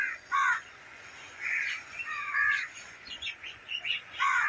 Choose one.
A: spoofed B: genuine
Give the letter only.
A